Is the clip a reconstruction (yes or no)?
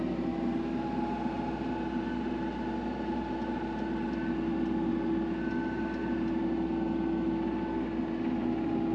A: no